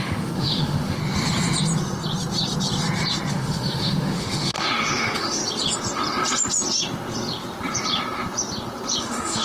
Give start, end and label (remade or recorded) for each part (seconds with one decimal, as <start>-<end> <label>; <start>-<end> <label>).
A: 0.0-1.0 remade; 1.0-3.3 recorded; 3.3-5.4 remade; 5.4-9.0 recorded; 9.0-9.4 remade